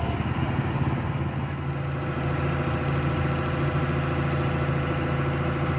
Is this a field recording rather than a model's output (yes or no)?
yes